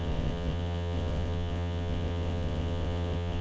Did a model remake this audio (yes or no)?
yes